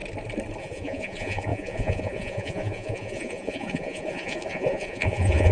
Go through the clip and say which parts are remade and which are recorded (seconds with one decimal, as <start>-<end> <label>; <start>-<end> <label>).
0.0-0.6 recorded; 0.6-5.5 remade